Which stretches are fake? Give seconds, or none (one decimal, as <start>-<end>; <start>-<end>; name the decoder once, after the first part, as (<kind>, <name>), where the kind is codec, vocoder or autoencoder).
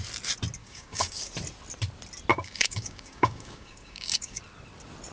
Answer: 0.6-1.3 (codec, DAC); 2.3-4.4